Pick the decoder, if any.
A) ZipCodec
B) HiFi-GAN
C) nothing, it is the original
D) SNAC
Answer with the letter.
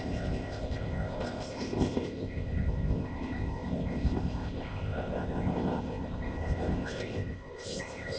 A